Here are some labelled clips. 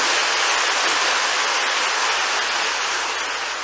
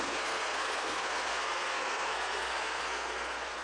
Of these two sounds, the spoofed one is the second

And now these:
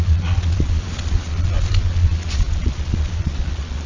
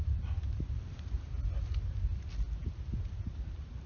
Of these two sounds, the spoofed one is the first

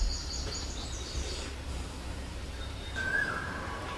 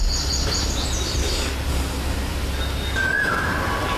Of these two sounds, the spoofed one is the first